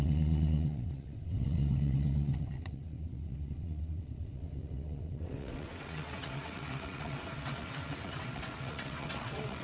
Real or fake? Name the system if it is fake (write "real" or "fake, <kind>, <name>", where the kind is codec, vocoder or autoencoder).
fake, vocoder, WaveNeXt